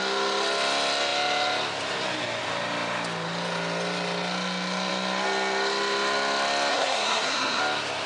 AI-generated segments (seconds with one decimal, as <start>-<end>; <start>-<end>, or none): 6.7-7.6